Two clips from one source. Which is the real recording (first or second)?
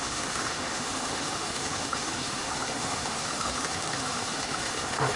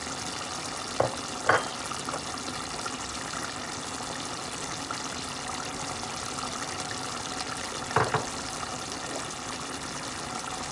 second